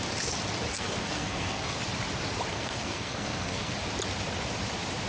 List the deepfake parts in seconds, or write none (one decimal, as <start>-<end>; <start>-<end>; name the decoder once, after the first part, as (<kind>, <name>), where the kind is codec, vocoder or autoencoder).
0.7-1.8 (codec, SNAC); 2.5-3.7